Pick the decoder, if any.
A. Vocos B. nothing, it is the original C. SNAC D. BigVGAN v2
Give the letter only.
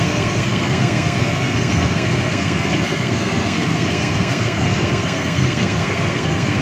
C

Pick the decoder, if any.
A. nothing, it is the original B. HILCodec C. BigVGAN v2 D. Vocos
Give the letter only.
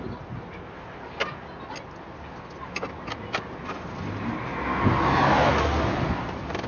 A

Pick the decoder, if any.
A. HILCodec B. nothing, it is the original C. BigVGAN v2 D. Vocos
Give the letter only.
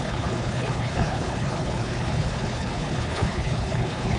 A